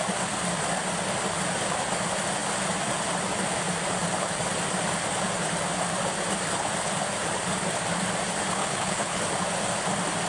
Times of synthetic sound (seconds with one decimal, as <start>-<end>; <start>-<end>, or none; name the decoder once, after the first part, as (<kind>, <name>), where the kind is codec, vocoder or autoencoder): 8.6-9.2 (codec, HILCodec)